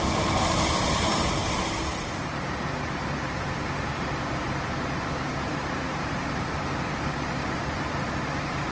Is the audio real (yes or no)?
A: no